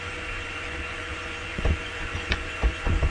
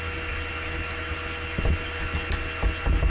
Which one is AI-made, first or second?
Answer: first